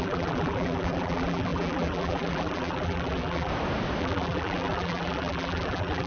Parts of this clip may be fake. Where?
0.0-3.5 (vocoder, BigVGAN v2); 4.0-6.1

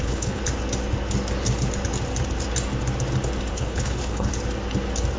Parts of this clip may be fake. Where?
0.0-0.4 (codec, HILCodec); 3.5-4.3

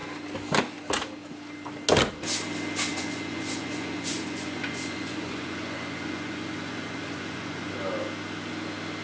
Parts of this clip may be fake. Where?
2.9-7.7 (vocoder, Vocos)

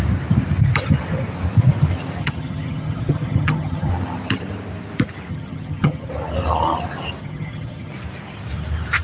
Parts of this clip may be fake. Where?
2.2-3.9 (vocoder, HiFi-GAN); 5.3-6.1; 7.2-7.9

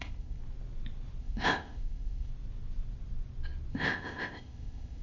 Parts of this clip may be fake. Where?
0.0-0.4 (codec, ZipCodec); 1.2-2.3; 3.7-5.0

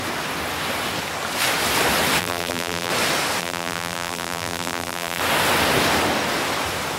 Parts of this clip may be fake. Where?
2.2-2.9 (vocoder, BigVGAN v2); 3.4-5.2